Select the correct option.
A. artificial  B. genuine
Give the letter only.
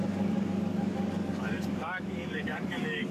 A